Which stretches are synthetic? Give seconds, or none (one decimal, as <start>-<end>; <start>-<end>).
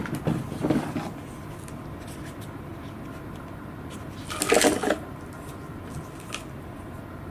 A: none